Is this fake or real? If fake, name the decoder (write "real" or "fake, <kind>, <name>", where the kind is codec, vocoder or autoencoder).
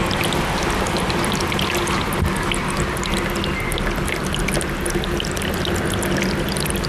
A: real